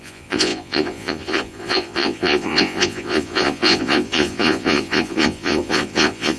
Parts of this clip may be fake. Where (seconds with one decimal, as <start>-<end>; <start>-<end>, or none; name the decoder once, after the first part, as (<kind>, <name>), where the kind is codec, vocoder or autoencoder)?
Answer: 0.0-6.4 (vocoder, Vocos)